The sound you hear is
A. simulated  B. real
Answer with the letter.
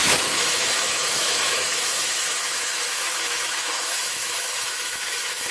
A